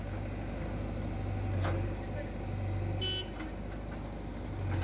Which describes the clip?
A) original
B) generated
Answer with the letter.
A